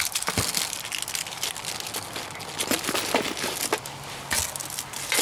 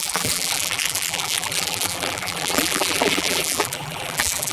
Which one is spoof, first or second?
second